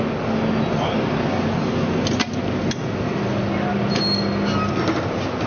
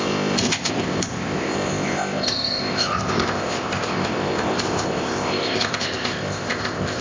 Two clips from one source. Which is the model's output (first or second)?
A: second